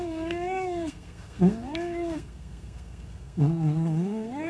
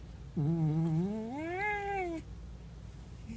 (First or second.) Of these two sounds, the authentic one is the second